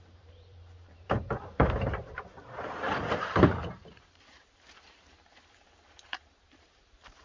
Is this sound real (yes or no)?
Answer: no